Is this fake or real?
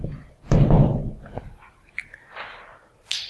real